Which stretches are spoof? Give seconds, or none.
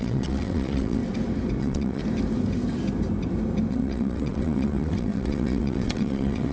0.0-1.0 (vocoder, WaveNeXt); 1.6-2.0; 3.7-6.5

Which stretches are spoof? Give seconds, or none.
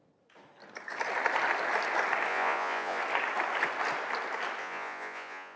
2.3-3.0 (vocoder, Vocos); 4.6-5.6